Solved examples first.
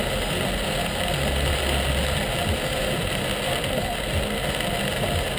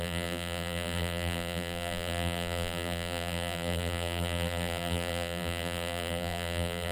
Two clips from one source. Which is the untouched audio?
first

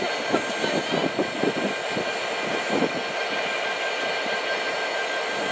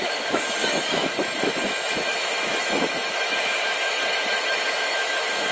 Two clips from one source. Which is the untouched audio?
first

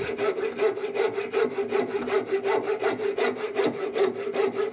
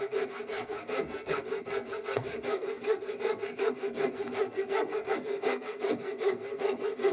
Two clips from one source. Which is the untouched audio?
first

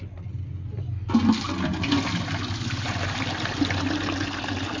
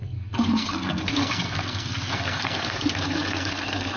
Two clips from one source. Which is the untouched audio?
first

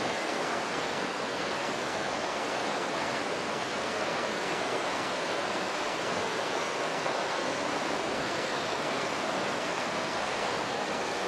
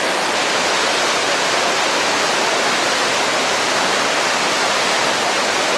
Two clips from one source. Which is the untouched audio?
second